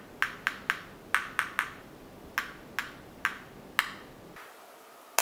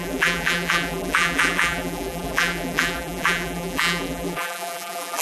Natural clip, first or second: first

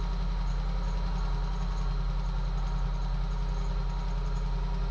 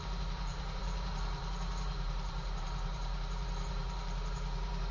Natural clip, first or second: first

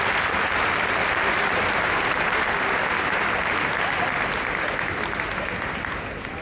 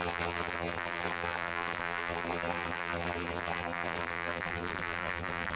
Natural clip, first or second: first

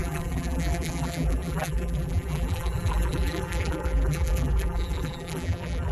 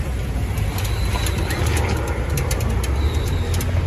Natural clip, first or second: second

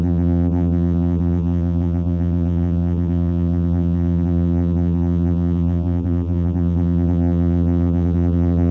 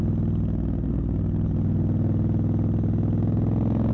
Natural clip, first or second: second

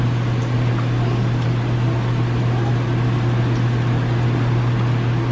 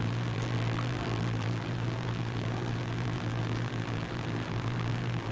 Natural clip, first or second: first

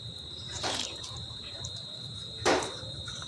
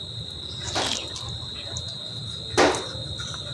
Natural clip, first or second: second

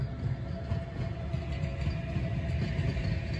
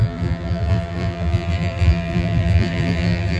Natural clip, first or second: first